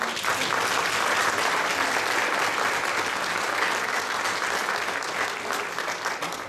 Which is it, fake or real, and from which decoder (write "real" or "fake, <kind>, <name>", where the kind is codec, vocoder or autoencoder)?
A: real